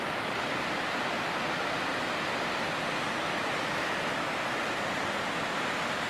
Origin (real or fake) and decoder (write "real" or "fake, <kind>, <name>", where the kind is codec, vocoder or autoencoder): real